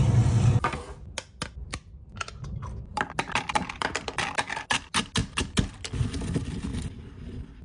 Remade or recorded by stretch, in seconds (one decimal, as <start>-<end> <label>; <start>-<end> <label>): 0.0-2.9 recorded; 2.9-4.2 remade; 4.2-6.7 recorded; 6.7-7.6 remade